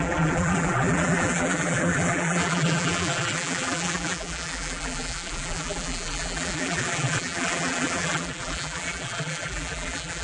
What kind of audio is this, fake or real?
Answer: fake